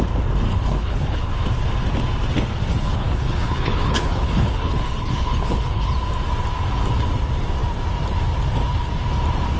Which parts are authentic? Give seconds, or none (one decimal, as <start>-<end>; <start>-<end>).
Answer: 0.0-0.5; 1.3-2.7; 5.9-9.6